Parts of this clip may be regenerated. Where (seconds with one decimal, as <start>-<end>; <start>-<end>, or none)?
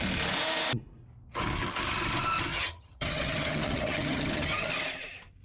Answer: 2.5-4.7